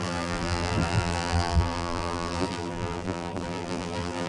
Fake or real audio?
fake